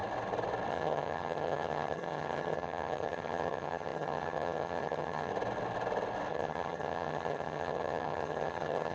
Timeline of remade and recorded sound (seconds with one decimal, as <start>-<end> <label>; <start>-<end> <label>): 0.0-0.7 recorded; 0.7-5.3 remade; 5.3-6.3 recorded; 6.3-8.9 remade